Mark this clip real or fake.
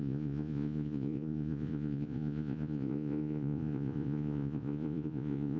fake